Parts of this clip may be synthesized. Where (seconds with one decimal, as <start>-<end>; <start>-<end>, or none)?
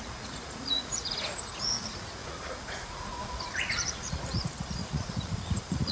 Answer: 0.0-5.9